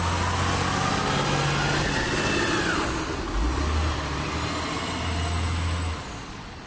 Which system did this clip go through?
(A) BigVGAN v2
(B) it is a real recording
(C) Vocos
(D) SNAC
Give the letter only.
B